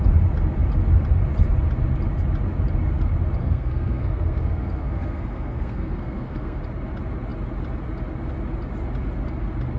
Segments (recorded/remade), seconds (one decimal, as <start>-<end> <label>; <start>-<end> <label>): 0.0-3.4 recorded; 3.4-6.6 remade; 6.6-9.8 recorded